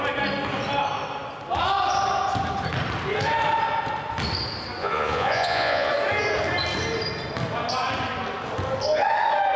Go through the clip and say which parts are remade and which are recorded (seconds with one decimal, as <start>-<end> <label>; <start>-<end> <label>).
0.0-4.8 recorded; 4.8-5.9 remade; 5.9-9.6 recorded